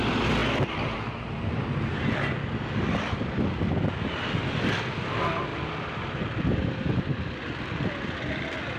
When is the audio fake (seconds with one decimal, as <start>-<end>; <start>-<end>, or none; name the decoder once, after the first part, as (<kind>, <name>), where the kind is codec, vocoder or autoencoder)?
none